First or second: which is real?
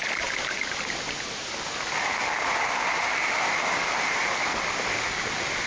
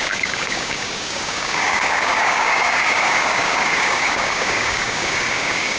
first